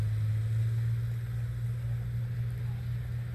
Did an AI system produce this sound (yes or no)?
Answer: no